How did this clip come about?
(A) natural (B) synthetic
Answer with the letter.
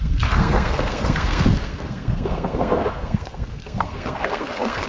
B